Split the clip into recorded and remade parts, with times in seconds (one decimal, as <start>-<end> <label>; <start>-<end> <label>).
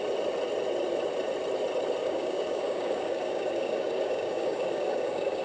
0.0-2.0 recorded; 2.0-5.4 remade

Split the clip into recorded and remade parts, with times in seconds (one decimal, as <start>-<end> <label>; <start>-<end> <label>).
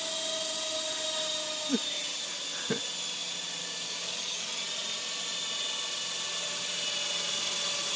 0.0-3.6 recorded; 3.6-4.5 remade; 4.5-8.0 recorded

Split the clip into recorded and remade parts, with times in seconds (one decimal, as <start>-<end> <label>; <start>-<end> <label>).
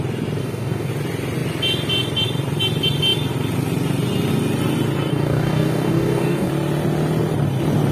0.0-0.4 recorded; 0.4-0.9 remade; 0.9-5.1 recorded; 5.1-6.5 remade; 6.5-7.9 recorded